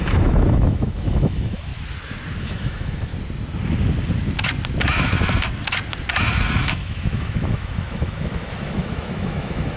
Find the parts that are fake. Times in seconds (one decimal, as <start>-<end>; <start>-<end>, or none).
0.0-1.7; 2.4-3.1; 6.6-9.8